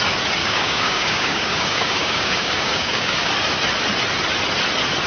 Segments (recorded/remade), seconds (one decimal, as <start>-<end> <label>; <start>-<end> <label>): 0.0-0.4 recorded; 0.4-3.3 remade; 3.3-5.1 recorded